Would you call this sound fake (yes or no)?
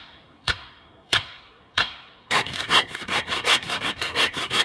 yes